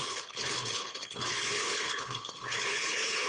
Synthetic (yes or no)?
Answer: yes